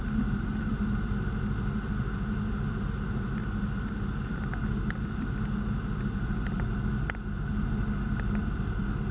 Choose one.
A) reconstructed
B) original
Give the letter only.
B